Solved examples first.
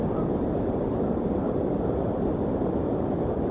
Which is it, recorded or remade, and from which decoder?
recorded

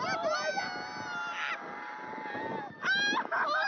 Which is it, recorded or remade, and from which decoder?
recorded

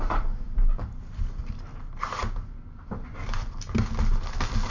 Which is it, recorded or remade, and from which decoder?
recorded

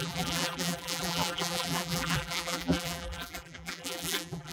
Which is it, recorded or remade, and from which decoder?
remade, vocoder, BigVGAN v2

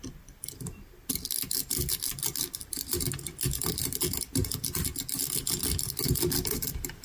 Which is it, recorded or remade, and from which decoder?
recorded